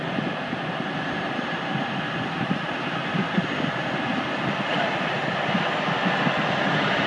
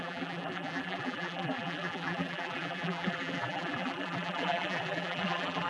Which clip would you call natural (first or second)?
first